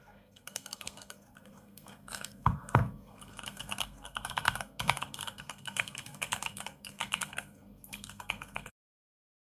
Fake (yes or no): yes